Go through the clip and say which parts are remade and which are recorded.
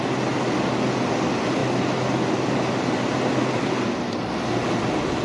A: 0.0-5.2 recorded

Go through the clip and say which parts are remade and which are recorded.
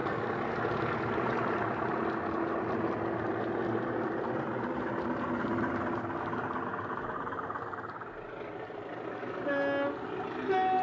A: 0.0-10.8 recorded